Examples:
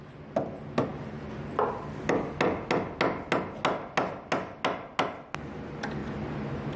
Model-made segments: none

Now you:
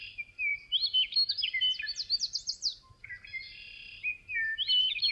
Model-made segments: none

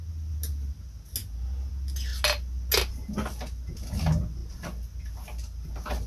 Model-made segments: none

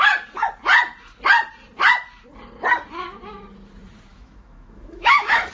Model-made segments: 4.1-5.5 (autoencoder, DAC-VAE)

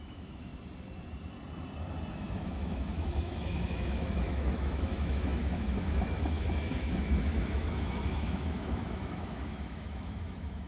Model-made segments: 0.0-0.5 (autoencoder, DAC-VAE); 2.1-10.7

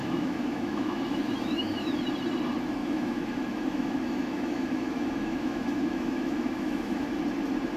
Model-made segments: 0.0-2.0 (autoencoder, DAC-VAE); 2.8-7.2

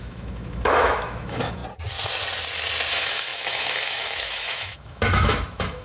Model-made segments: 0.0-1.6 (autoencoder, DAC-VAE); 2.9-5.8